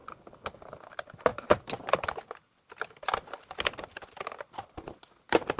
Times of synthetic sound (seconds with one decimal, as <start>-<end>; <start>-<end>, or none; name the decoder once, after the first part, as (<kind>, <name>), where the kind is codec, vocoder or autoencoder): none